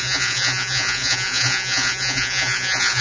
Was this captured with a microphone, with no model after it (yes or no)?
no